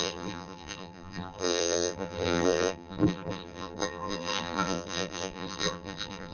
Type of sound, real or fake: fake